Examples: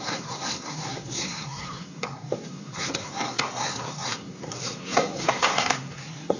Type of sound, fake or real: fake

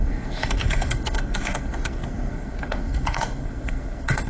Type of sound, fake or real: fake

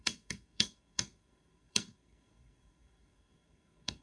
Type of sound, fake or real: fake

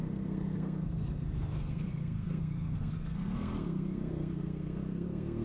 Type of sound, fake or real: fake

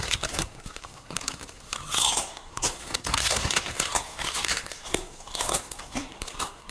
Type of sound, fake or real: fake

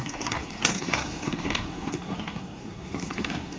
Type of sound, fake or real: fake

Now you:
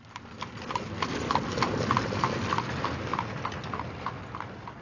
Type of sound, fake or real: real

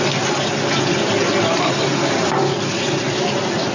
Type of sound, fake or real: real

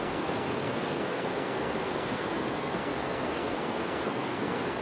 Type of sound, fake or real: fake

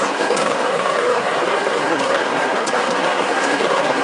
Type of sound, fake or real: fake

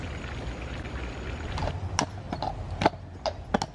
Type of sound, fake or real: real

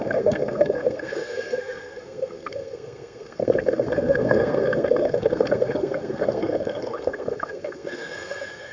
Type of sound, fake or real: fake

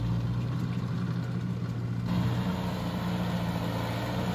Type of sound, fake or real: real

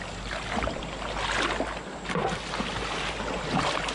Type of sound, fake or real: real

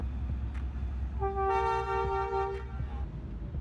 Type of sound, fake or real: real